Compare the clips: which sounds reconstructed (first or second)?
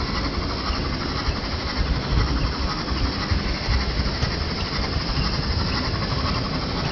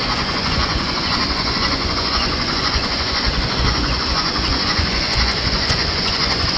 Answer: second